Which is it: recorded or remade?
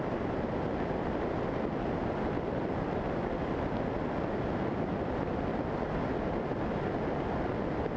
recorded